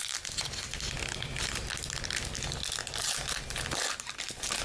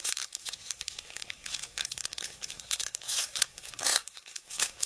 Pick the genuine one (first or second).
first